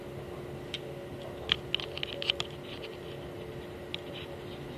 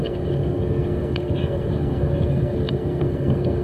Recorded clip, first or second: first